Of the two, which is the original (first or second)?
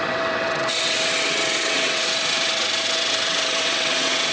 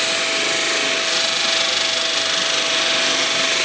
second